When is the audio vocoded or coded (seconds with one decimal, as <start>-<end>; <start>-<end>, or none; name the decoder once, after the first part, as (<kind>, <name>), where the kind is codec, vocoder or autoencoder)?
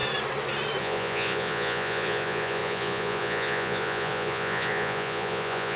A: 0.8-5.8 (vocoder, Vocos)